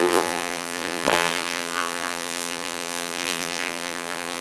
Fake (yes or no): yes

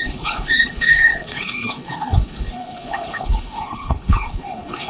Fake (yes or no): yes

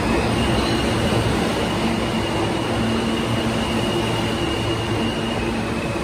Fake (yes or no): no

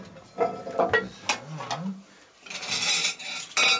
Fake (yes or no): no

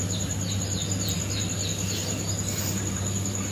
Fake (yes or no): no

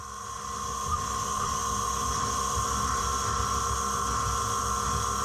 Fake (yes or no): no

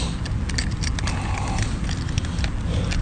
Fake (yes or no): no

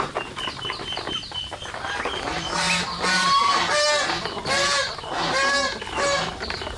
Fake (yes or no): no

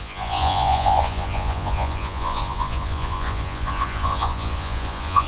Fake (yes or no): yes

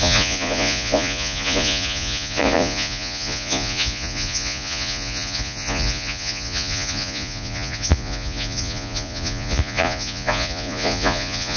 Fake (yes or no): yes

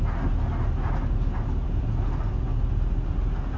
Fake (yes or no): no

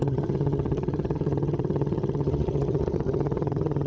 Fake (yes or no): yes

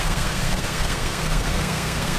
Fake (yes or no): yes